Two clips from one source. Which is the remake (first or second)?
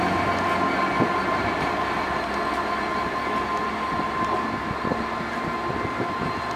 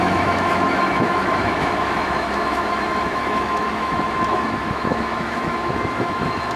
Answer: second